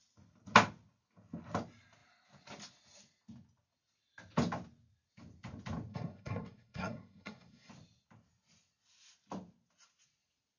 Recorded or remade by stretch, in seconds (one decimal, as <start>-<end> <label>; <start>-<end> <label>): 0.0-5.9 recorded; 5.9-7.7 remade; 7.7-10.6 recorded